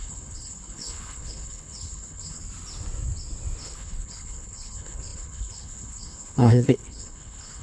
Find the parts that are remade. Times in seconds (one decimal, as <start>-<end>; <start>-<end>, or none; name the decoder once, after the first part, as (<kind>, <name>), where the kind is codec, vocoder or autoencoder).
0.0-2.4 (codec, HILCodec); 3.6-7.6